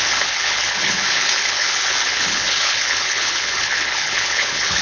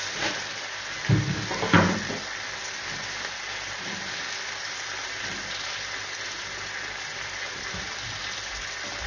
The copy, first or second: first